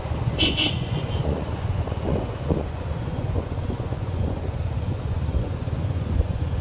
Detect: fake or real fake